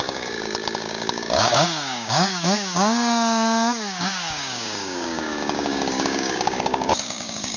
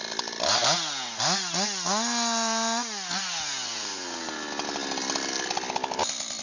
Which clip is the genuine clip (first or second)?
second